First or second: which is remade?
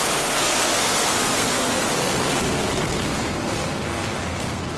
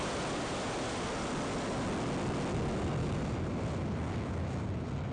first